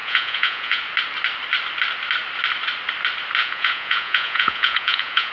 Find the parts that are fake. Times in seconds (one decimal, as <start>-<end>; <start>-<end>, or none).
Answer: 0.0-0.8; 3.4-5.3